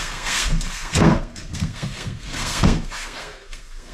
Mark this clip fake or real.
fake